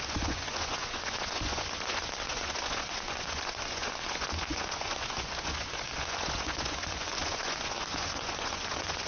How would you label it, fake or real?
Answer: fake